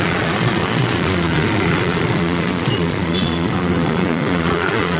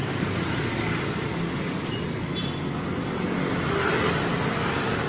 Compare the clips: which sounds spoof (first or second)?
first